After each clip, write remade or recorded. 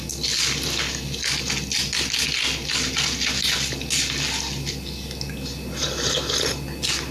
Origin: recorded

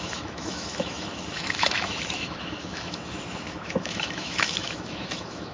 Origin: remade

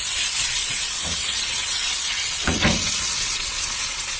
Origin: remade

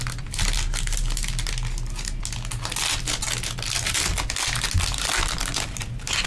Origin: recorded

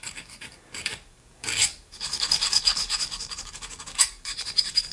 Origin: remade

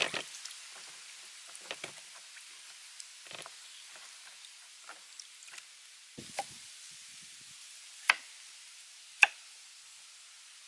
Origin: recorded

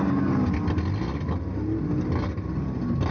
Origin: recorded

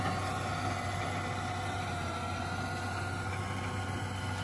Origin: recorded